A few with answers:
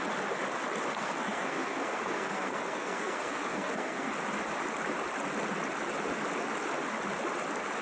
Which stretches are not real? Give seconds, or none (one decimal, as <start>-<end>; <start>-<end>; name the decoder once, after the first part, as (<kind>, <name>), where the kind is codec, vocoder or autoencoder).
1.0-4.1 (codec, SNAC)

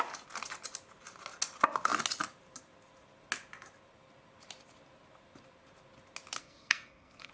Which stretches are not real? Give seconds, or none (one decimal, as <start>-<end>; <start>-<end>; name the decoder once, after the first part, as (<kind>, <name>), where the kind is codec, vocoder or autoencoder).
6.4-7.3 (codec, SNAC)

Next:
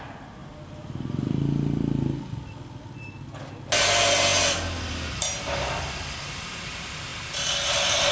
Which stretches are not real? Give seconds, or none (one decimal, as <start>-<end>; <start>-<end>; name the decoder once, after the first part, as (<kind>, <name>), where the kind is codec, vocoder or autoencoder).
none